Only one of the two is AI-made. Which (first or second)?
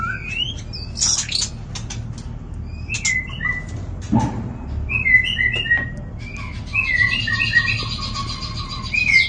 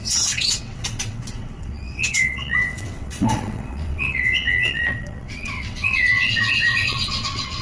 second